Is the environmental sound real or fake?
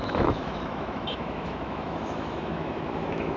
fake